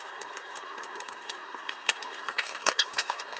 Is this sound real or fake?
fake